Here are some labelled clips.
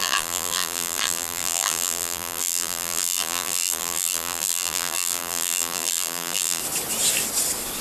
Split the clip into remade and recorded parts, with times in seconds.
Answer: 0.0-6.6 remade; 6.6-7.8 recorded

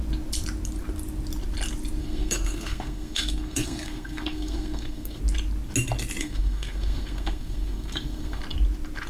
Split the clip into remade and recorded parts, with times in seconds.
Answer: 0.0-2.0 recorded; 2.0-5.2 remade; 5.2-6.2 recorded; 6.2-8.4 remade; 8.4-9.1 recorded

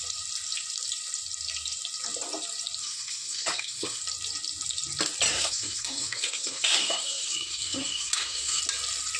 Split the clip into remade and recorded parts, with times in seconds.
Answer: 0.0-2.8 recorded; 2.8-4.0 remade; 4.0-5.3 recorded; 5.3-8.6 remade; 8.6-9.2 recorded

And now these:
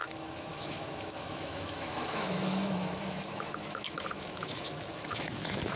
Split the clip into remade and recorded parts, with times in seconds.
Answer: 0.0-5.8 remade

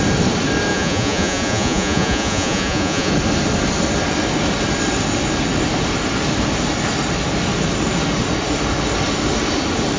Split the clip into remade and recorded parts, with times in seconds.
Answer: 0.0-0.7 recorded; 0.7-3.1 remade; 3.1-10.0 recorded

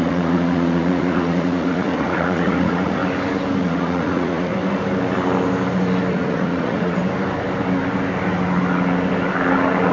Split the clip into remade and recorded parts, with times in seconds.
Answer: 0.0-3.0 remade; 3.0-3.6 recorded; 3.6-4.5 remade; 4.5-6.1 recorded; 6.1-7.0 remade; 7.0-9.9 recorded